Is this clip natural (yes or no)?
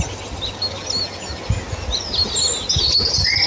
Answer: yes